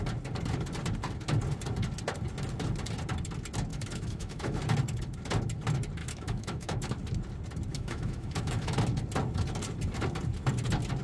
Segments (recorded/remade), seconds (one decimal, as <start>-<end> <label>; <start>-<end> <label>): 0.0-3.7 recorded; 3.7-4.6 remade; 4.6-6.0 recorded; 6.0-6.9 remade; 6.9-7.7 recorded; 7.7-8.8 remade; 8.8-11.0 recorded